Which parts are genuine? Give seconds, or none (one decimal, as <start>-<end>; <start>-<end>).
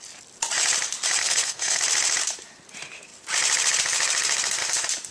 0.0-1.2; 1.8-5.1